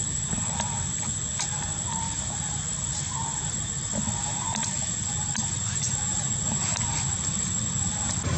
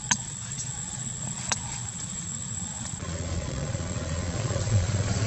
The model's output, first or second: second